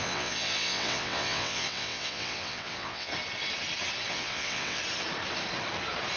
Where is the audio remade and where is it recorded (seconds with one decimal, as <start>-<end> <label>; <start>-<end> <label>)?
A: 0.0-3.1 remade; 3.1-4.1 recorded; 4.1-4.8 remade; 4.8-6.2 recorded